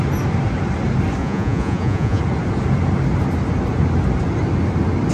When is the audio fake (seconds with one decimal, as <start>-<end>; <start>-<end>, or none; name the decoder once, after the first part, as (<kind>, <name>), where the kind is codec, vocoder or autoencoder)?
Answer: 1.2-2.2 (vocoder, Vocos)